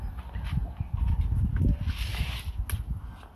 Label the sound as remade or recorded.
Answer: recorded